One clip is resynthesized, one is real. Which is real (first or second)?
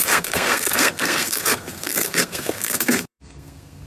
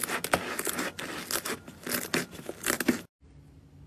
second